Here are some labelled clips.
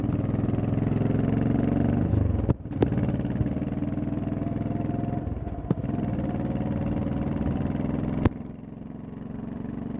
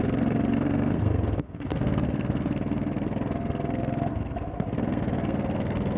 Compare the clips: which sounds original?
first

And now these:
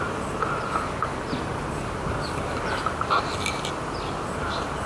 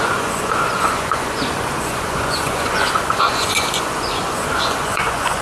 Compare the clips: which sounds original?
first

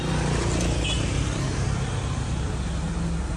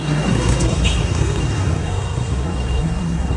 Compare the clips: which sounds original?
first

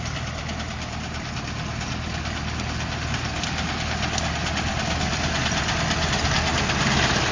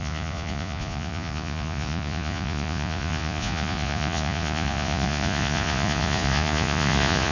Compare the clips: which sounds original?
first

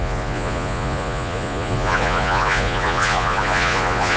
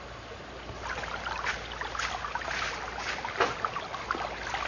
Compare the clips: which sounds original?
second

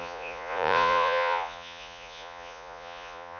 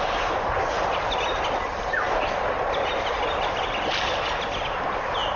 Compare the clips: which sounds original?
second